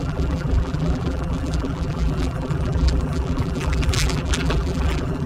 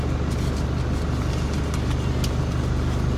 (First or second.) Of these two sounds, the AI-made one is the first